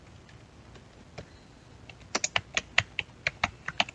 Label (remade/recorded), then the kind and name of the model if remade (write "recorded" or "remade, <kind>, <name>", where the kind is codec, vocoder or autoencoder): recorded